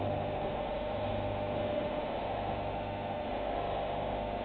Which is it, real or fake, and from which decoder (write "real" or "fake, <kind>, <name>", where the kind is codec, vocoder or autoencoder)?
fake, autoencoder, DAC-VAE